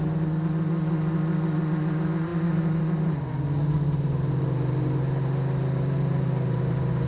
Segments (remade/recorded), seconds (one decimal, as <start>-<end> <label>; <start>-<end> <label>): 0.0-7.1 recorded